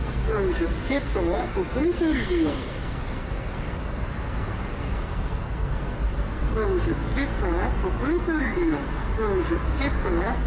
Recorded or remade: remade